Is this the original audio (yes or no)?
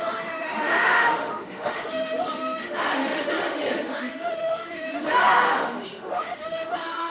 no